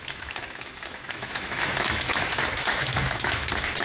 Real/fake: fake